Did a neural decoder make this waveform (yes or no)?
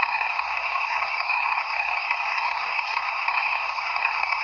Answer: yes